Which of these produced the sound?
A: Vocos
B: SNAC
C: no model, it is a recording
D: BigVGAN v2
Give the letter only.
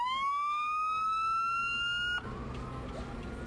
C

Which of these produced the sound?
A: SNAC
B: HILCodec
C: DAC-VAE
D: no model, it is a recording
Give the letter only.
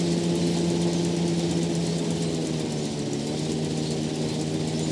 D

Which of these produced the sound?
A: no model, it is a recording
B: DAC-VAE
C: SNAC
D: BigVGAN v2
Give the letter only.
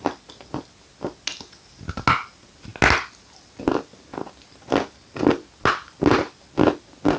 A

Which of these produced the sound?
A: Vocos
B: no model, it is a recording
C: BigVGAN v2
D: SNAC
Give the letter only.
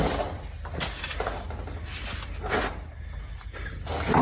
B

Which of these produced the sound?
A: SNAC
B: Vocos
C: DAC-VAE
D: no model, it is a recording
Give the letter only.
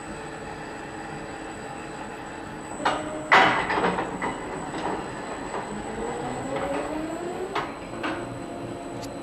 D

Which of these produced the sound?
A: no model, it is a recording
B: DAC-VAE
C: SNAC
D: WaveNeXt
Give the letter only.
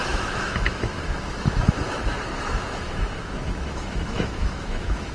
B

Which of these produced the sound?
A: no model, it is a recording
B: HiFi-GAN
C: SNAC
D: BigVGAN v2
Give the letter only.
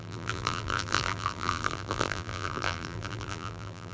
D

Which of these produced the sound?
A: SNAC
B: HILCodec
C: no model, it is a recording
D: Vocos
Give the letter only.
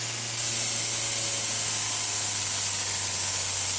C